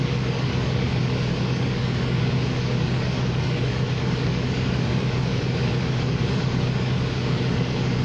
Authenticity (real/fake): fake